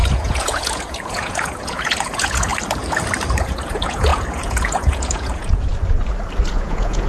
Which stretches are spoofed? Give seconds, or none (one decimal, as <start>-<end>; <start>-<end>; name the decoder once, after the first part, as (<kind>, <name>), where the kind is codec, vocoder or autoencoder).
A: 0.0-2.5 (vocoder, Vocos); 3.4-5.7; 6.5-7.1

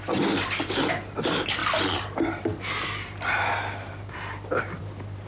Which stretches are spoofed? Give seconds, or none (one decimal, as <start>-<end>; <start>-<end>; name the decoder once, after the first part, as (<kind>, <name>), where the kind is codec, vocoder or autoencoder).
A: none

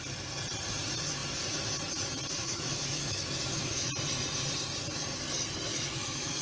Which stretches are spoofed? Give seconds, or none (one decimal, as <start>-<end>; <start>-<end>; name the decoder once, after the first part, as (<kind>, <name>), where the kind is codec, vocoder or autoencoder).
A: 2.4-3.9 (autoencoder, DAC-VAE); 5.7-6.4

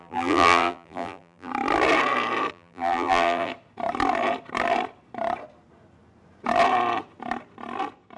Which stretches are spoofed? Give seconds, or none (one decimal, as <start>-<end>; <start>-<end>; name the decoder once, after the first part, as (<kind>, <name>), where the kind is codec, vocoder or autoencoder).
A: 0.0-1.5 (vocoder, BigVGAN v2); 2.5-3.5

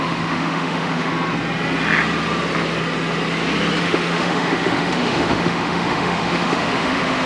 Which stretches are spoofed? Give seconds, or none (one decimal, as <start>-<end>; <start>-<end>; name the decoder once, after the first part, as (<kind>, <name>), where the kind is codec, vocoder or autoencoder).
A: 0.0-1.1 (autoencoder, DAC-VAE); 3.8-7.3